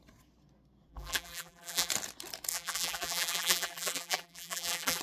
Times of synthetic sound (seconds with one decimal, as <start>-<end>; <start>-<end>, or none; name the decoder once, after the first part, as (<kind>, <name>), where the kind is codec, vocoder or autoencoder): 0.9-1.9 (vocoder, BigVGAN v2); 2.5-5.0